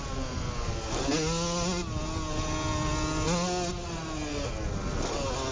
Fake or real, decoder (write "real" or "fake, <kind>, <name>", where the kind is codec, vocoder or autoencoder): real